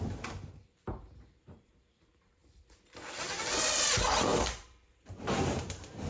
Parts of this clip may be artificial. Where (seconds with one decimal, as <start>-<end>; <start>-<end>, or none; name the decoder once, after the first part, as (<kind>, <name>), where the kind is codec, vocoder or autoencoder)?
0.0-2.4 (vocoder, BigVGAN v2); 3.9-6.1